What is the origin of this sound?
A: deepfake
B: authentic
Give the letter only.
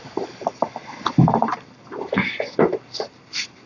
B